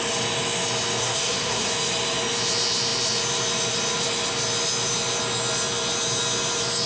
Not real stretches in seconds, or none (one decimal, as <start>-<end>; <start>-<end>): 1.0-1.7